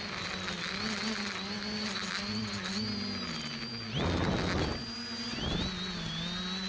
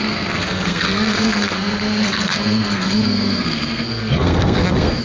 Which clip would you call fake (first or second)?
second